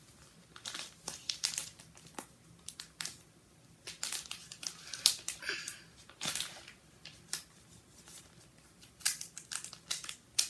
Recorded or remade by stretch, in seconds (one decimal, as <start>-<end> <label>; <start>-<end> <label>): 0.0-10.5 recorded